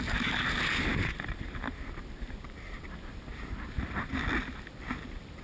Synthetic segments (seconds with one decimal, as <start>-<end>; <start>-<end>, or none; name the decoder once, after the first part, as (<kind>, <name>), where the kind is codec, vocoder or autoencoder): 0.9-4.1 (vocoder, BigVGAN v2)